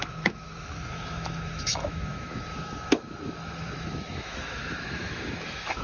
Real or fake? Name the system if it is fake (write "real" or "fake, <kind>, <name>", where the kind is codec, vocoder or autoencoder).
fake, autoencoder, DAC-VAE